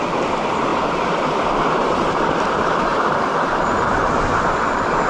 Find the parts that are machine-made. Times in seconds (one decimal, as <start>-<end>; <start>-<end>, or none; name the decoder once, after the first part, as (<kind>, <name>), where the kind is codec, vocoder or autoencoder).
0.7-3.8 (vocoder, BigVGAN v2)